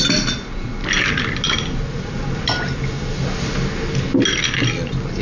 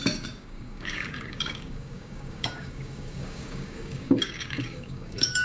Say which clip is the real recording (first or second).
first